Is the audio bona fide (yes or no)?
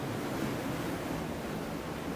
yes